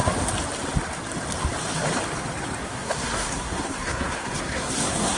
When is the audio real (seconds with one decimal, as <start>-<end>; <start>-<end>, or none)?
0.0-2.6